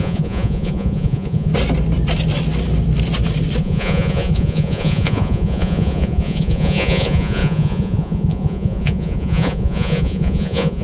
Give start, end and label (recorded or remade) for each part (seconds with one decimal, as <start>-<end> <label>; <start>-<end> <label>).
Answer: 0.0-1.5 remade; 1.5-3.6 recorded; 3.6-10.8 remade